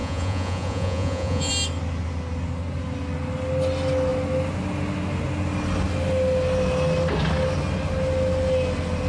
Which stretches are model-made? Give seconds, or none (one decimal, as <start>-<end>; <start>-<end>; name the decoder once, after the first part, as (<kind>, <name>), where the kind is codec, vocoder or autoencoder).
0.0-1.5 (vocoder, Vocos)